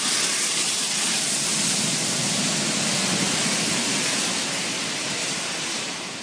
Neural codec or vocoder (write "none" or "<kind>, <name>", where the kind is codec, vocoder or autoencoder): none